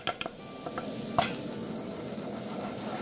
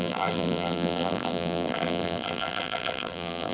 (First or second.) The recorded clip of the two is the first